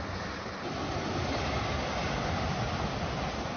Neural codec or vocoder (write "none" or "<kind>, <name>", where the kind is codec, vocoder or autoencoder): none